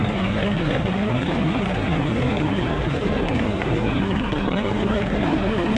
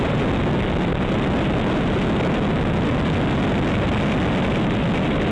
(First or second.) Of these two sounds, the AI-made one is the first